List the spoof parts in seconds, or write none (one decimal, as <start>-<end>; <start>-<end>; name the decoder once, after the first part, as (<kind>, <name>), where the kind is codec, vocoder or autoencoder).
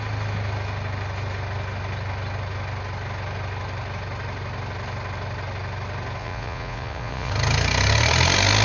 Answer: 6.2-7.3 (vocoder, Vocos)